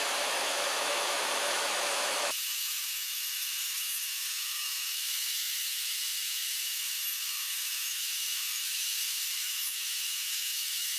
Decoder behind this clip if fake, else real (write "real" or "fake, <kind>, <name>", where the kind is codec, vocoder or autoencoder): fake, autoencoder, DAC-VAE